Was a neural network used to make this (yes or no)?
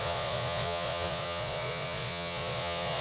yes